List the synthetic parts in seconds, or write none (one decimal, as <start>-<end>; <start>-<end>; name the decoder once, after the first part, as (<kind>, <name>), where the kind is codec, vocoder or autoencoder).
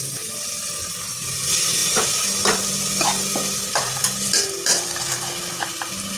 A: 1.8-5.5 (vocoder, BigVGAN v2)